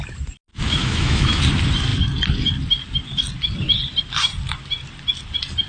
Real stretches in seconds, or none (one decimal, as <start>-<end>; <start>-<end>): 0.0-0.5; 1.4-5.7